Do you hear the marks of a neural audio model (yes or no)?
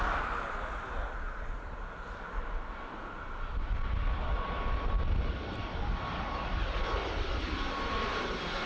no